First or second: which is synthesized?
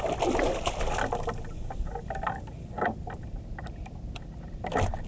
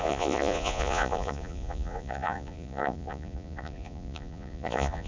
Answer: second